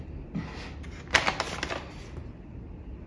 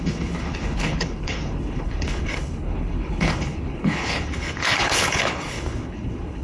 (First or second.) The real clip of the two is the first